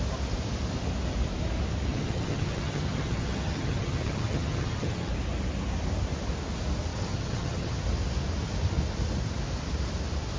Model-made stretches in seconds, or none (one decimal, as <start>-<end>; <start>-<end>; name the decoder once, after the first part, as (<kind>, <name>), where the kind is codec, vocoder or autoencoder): 1.9-5.1 (vocoder, HiFi-GAN); 6.9-7.8